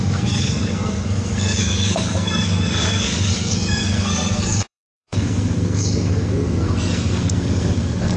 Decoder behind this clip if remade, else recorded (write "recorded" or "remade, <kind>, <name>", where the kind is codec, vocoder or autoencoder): remade, codec, SNAC